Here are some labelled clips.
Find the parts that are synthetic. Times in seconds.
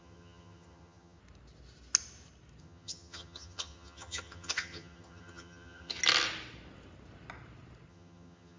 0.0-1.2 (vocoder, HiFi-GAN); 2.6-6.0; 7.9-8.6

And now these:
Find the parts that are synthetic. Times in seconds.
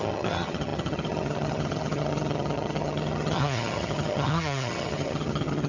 0.0-5.7 (vocoder, HiFi-GAN)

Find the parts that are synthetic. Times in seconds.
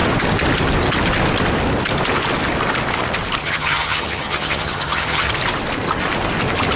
3.4-5.3 (vocoder, HiFi-GAN)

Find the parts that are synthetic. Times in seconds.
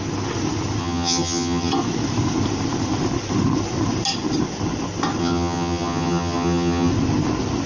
0.8-1.7 (vocoder, HiFi-GAN); 5.2-6.9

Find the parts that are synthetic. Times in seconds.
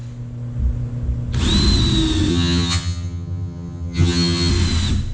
2.3-4.5 (vocoder, HiFi-GAN)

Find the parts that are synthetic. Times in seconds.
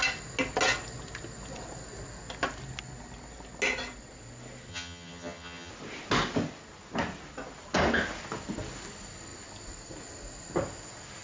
4.7-5.7 (vocoder, HiFi-GAN)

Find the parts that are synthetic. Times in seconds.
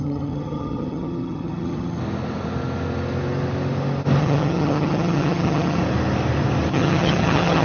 0.0-2.0 (vocoder, HiFi-GAN); 4.2-5.8; 6.7-7.6